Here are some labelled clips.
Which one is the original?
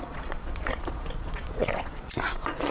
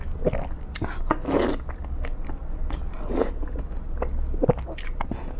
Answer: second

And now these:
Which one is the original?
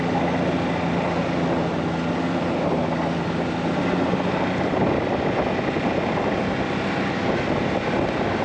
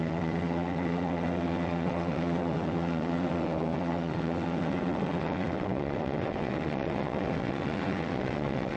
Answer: first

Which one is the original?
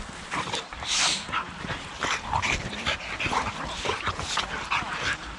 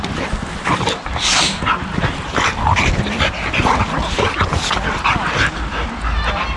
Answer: second